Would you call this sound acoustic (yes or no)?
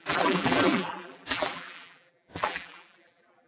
no